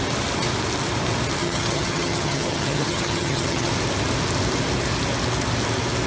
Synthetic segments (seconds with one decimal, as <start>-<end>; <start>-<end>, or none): 1.4-3.7